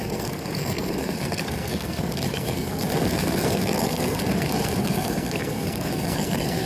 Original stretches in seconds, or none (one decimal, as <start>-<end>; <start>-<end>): none